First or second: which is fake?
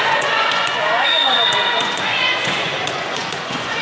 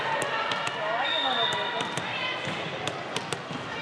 first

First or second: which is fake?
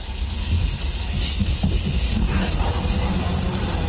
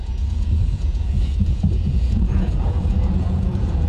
second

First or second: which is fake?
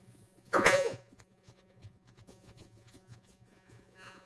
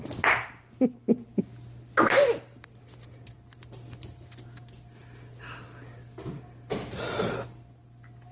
first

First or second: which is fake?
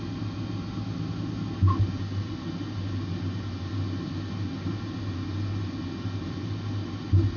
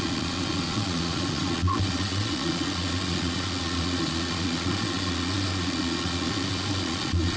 second